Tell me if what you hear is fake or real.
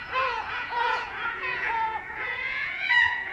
fake